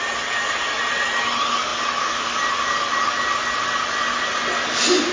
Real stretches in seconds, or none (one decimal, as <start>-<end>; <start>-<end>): 0.0-5.1